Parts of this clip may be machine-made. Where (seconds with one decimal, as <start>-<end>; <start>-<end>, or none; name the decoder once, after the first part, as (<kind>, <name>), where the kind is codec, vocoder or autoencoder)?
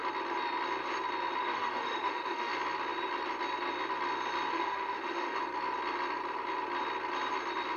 1.4-2.5 (autoencoder, DAC-VAE); 4.5-5.4